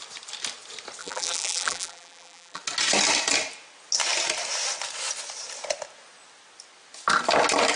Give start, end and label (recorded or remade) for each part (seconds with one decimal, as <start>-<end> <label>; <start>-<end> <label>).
0.0-1.0 recorded; 1.0-2.6 remade; 2.6-7.8 recorded